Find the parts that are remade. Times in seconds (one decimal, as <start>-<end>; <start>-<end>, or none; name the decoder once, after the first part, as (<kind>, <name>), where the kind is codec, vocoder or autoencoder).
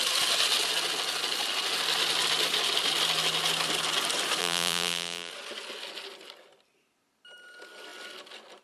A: 4.4-5.3 (vocoder, BigVGAN v2)